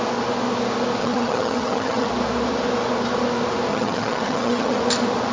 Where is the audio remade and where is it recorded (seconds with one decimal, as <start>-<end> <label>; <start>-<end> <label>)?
0.0-1.0 recorded; 1.0-2.1 remade; 2.1-3.7 recorded; 3.7-4.8 remade; 4.8-5.3 recorded